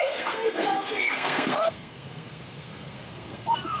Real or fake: fake